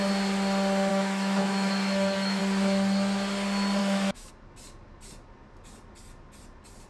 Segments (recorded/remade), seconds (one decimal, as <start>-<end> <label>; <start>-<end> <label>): 0.0-0.9 recorded; 0.9-2.4 remade; 2.4-3.8 recorded; 3.8-4.3 remade; 4.3-6.9 recorded